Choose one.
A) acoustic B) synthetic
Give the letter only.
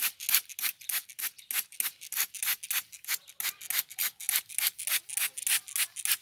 A